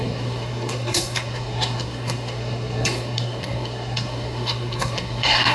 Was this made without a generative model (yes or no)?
no